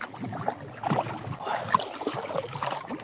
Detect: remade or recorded recorded